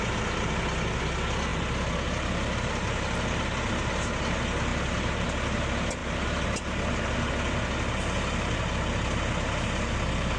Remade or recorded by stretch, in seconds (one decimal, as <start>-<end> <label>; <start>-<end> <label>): 0.0-10.4 recorded